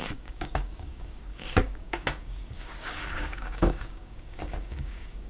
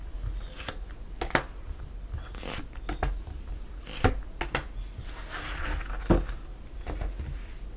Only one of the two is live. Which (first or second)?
second